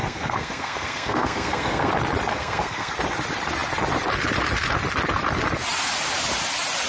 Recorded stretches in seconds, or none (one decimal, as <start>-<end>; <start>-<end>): 1.9-2.3; 2.9-6.9